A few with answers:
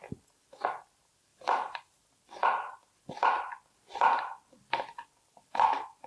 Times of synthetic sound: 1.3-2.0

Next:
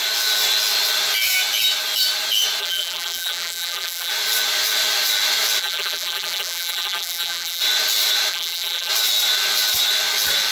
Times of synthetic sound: 2.6-4.1; 5.6-7.6; 8.3-8.9

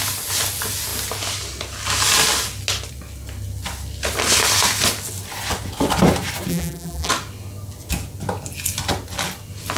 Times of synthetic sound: 6.5-7.1

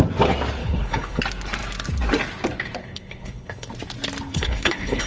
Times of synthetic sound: 0.6-1.2; 2.8-3.7; 4.3-5.1

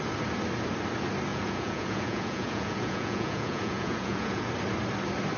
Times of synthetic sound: 1.3-4.5

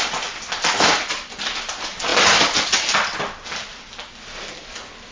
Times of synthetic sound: none